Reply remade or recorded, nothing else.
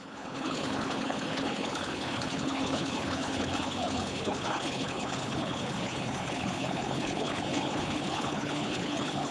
remade